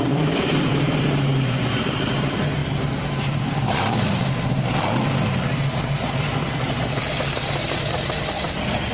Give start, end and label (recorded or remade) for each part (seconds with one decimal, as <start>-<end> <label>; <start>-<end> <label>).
0.0-8.9 remade